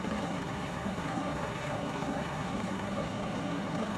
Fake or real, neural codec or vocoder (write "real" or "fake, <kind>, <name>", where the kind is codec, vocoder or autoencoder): fake, codec, SNAC